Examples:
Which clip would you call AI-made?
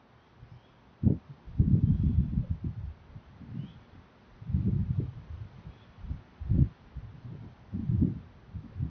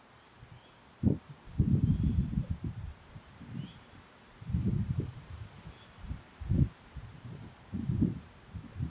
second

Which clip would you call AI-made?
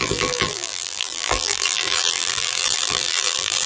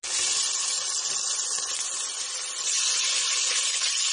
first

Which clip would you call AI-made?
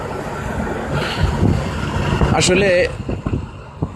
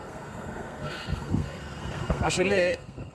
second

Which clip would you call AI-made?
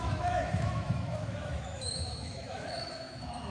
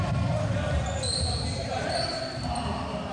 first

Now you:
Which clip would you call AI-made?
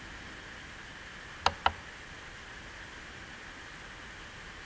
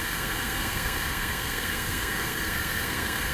second